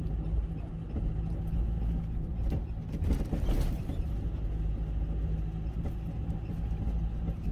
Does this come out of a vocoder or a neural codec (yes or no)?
no